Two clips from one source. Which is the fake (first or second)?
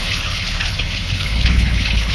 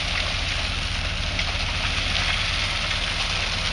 first